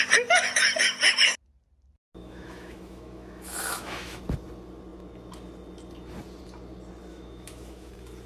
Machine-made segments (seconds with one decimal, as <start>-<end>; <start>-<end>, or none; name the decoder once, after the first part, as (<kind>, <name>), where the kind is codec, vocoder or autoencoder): 2.2-4.2 (autoencoder, DAC-VAE); 7.1-7.9

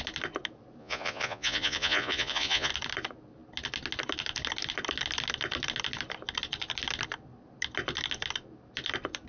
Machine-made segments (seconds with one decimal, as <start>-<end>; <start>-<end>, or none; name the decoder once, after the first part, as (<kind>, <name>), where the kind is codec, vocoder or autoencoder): 0.8-2.7 (vocoder, Vocos)

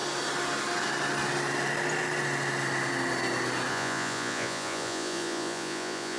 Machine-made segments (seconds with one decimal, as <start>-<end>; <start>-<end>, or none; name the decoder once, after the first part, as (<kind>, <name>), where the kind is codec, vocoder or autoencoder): 3.7-6.2 (vocoder, Vocos)

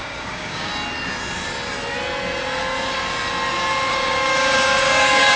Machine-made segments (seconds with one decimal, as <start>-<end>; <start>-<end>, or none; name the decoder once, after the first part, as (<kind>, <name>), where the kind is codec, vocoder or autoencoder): 0.0-0.7 (codec, DAC); 3.9-5.4

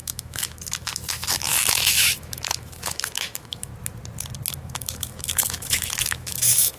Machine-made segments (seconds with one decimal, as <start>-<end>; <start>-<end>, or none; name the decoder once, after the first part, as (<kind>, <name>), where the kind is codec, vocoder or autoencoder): 0.0-3.7 (autoencoder, DAC-VAE); 4.5-6.8

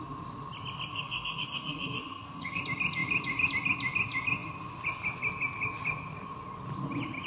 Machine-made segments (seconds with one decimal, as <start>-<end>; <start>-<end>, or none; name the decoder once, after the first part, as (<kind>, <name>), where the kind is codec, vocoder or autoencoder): 0.9-2.6 (codec, SNAC)